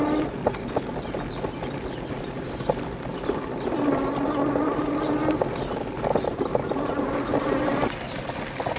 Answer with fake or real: real